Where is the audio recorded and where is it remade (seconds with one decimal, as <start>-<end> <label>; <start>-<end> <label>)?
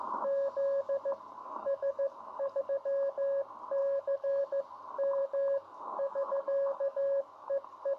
0.0-1.4 recorded; 1.4-2.6 remade; 2.6-3.8 recorded; 3.8-4.4 remade; 4.4-5.2 recorded; 5.2-7.5 remade; 7.5-8.0 recorded